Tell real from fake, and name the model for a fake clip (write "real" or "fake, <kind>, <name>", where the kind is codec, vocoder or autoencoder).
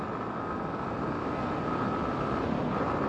real